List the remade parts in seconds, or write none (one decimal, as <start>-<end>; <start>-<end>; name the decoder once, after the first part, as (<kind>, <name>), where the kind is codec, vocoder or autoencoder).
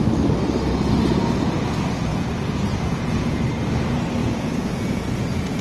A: 2.1-3.4 (vocoder, Vocos); 4.2-5.6